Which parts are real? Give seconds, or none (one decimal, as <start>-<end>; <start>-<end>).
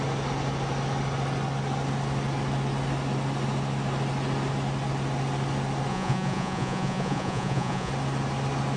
0.0-5.9; 7.9-8.8